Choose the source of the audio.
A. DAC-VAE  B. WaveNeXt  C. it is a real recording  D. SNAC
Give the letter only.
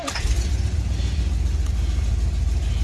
C